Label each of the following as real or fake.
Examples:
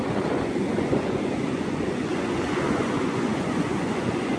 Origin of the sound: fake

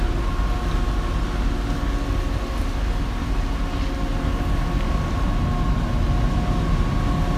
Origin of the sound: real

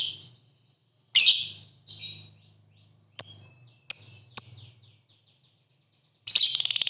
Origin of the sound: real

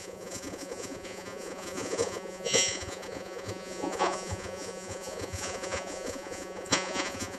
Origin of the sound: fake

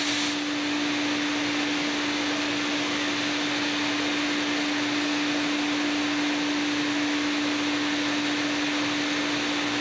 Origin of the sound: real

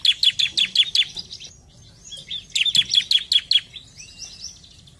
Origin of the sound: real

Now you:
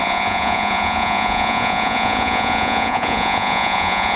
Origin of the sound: fake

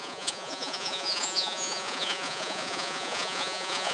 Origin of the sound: fake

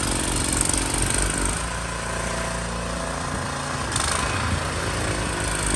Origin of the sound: real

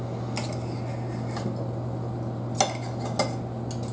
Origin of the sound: real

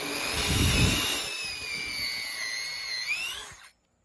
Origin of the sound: real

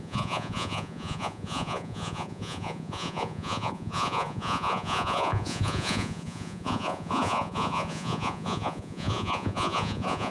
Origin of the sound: fake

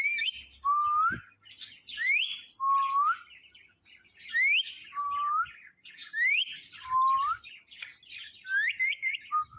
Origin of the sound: real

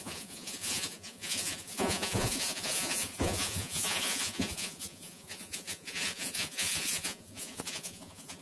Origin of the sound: fake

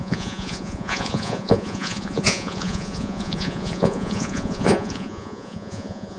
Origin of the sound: fake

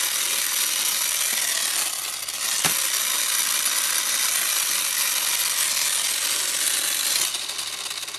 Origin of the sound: real